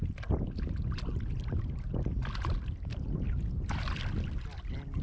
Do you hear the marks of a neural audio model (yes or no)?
no